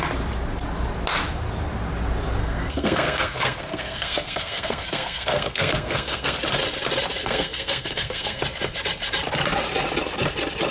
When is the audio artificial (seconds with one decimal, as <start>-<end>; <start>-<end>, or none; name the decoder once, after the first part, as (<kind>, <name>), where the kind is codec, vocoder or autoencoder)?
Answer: 2.4-6.4 (codec, SNAC); 7.2-8.4